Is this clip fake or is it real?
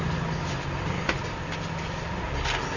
real